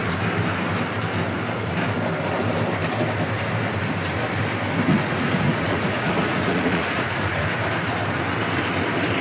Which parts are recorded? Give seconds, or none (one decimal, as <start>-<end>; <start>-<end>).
0.0-4.9; 7.5-9.2